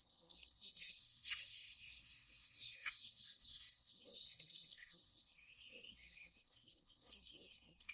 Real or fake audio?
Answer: fake